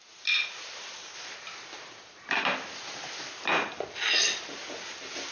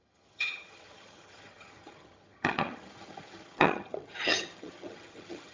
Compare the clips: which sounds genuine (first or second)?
first